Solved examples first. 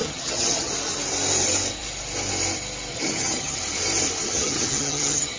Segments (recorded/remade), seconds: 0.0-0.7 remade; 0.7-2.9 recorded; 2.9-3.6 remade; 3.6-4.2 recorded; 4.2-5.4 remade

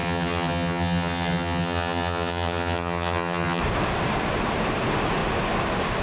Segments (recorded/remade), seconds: 0.0-3.6 remade; 3.6-6.0 recorded

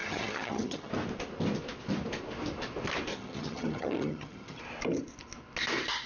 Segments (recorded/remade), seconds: 0.0-0.9 remade; 0.9-3.1 recorded; 3.1-4.6 remade; 4.6-6.1 recorded

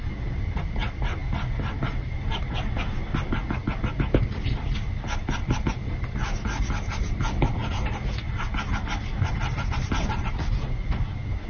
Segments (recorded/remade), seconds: 0.0-11.5 recorded